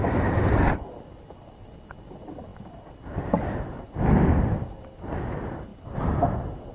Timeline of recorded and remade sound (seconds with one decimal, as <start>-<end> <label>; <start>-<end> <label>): 0.0-6.7 recorded